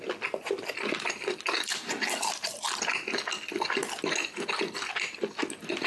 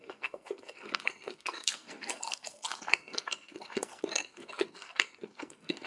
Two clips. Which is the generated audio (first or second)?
second